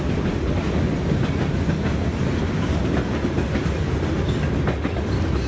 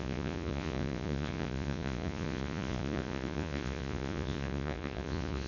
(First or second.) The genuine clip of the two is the first